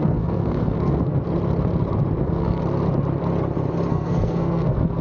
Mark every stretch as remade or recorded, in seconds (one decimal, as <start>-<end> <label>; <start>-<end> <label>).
0.0-1.2 remade; 1.2-2.2 recorded; 2.2-2.6 remade; 2.6-3.9 recorded; 3.9-5.0 remade